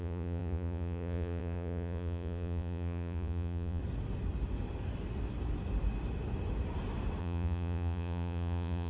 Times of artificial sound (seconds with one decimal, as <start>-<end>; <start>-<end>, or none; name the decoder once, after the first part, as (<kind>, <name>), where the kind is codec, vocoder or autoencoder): 0.0-3.8 (vocoder, Vocos); 7.2-8.9